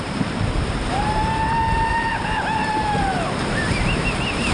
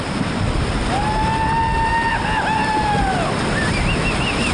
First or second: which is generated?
first